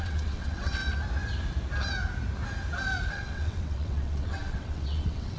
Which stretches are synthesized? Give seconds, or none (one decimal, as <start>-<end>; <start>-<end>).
0.0-0.8; 3.1-5.4